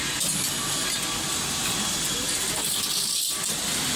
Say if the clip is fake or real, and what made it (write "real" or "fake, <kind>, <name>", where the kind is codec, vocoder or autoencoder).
real